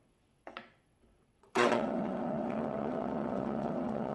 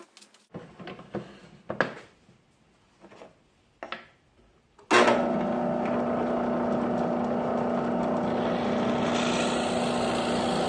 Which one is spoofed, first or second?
first